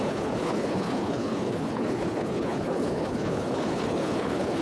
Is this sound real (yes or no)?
no